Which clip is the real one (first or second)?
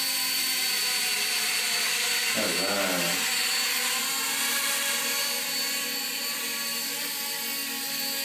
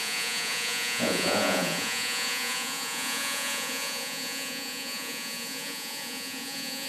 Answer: first